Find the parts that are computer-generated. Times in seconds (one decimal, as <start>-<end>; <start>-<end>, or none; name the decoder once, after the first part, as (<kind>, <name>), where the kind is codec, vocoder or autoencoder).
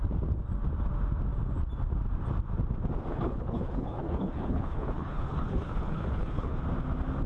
3.1-6.6 (codec, HILCodec)